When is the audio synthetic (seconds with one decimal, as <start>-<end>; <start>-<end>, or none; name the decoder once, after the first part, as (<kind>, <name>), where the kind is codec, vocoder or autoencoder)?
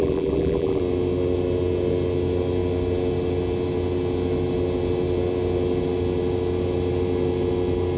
0.0-0.8 (vocoder, BigVGAN v2)